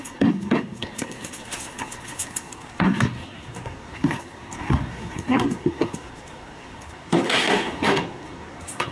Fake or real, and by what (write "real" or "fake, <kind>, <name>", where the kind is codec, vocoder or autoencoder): fake, codec, SNAC